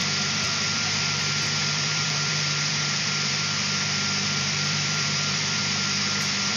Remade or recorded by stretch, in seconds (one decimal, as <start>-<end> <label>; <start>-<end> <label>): 0.0-1.2 remade; 1.2-1.6 recorded; 1.6-5.6 remade; 5.6-6.6 recorded